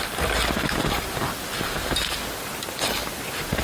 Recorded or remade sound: recorded